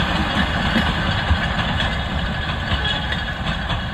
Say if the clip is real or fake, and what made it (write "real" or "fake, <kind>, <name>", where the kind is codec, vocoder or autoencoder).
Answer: real